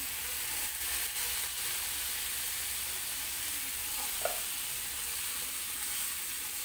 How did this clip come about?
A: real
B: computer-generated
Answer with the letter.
A